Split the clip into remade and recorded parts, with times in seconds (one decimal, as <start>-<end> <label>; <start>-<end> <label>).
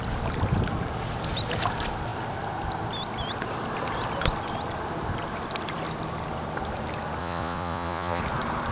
0.0-7.2 recorded; 7.2-8.2 remade; 8.2-8.7 recorded